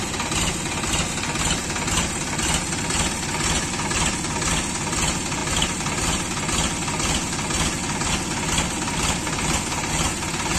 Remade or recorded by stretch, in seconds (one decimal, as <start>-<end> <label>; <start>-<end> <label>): 0.0-1.6 recorded; 1.6-3.0 remade; 3.0-10.6 recorded